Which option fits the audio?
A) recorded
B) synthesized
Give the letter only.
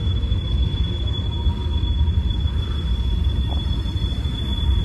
A